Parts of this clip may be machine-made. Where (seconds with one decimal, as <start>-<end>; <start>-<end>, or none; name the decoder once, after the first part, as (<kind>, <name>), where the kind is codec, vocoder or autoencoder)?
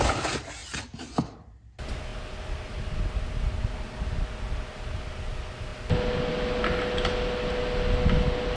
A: none